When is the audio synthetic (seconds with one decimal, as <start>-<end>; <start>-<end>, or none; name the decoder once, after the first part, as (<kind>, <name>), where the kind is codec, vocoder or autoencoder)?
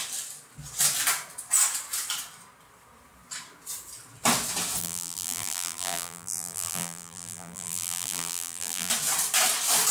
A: 4.8-8.9 (vocoder, BigVGAN v2)